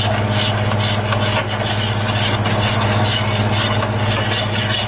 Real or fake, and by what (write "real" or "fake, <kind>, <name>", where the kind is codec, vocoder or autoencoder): real